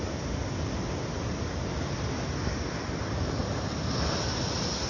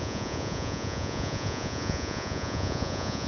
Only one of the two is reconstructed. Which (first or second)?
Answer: second